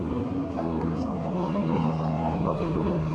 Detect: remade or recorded remade